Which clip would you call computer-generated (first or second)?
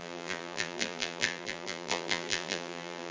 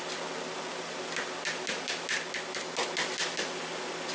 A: first